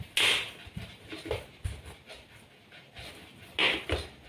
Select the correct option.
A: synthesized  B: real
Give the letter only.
B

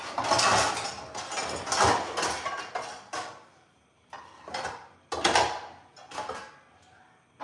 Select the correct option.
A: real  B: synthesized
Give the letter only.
A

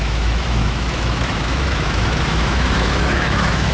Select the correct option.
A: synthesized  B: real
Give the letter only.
A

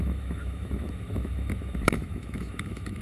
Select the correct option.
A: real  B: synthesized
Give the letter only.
B